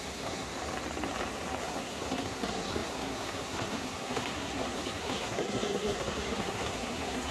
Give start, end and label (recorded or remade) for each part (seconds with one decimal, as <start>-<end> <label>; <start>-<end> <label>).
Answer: 0.0-0.5 remade; 0.5-1.6 recorded; 1.6-7.3 remade